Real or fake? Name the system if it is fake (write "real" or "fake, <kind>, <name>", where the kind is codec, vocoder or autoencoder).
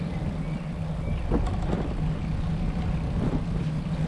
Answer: real